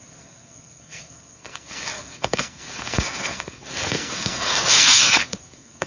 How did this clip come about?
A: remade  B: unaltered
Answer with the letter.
A